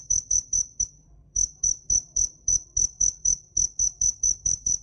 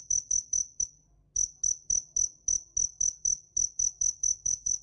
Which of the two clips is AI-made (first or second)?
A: first